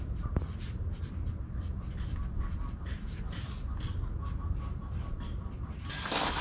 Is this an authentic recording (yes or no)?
yes